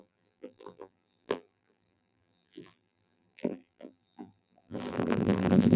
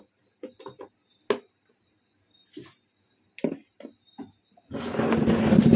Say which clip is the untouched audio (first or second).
second